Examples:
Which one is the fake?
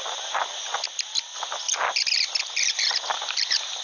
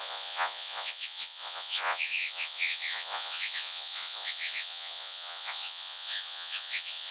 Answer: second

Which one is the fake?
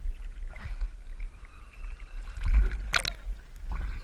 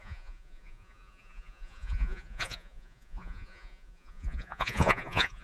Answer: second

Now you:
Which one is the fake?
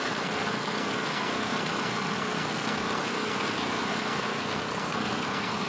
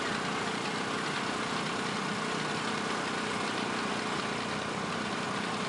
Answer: first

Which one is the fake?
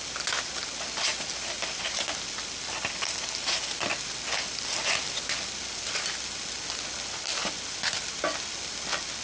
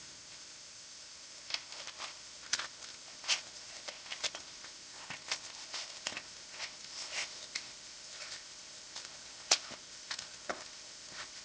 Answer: second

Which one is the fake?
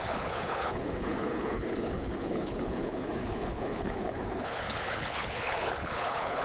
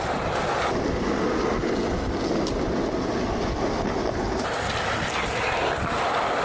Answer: first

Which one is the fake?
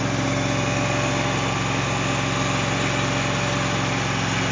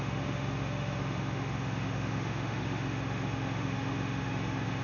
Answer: second